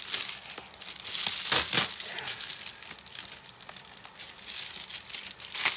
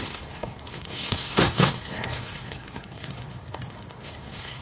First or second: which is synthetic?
second